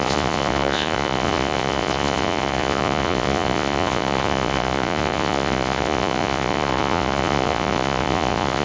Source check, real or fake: fake